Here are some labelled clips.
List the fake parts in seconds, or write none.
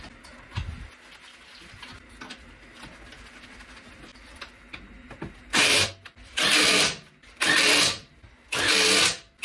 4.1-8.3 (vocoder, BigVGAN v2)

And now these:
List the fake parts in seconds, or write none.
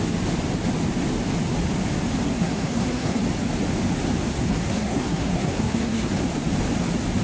2.2-3.2 (codec, SNAC); 4.3-6.1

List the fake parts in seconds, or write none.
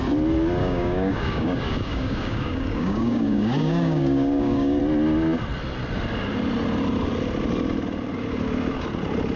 0.6-4.8 (codec, DAC)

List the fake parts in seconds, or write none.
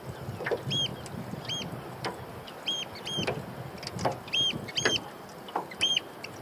none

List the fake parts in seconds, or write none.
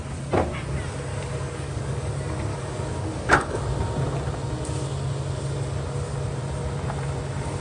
1.1-2.1 (codec, DAC); 2.5-3.6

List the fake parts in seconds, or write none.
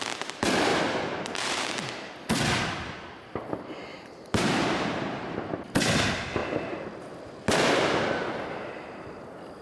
0.7-1.7 (vocoder, BigVGAN v2); 3.9-5.4